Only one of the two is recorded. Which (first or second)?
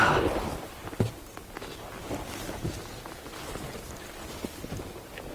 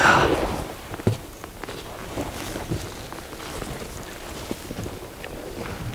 first